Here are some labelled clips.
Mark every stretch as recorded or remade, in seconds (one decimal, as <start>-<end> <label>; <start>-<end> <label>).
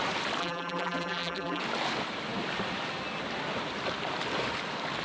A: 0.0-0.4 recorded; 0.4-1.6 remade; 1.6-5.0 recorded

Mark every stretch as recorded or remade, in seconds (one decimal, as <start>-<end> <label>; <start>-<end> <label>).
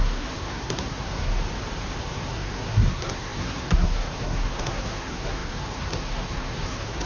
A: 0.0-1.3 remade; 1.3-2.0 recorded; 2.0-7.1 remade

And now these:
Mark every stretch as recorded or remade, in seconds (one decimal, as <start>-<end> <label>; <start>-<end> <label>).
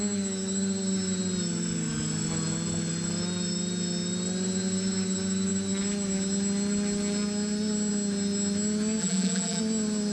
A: 0.0-9.0 recorded; 9.0-9.6 remade; 9.6-10.1 recorded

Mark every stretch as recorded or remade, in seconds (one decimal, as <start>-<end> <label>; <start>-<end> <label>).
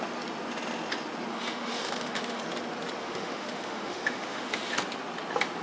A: 0.0-1.3 recorded; 1.3-2.4 remade; 2.4-3.0 recorded; 3.0-4.8 remade; 4.8-5.6 recorded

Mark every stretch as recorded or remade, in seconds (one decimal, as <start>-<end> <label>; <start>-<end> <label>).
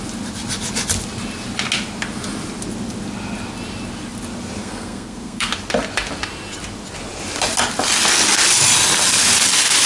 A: 0.0-4.6 recorded; 4.6-5.5 remade; 5.5-9.9 recorded